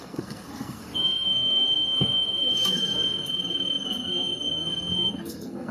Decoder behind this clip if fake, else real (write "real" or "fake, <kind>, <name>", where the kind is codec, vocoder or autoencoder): fake, codec, SNAC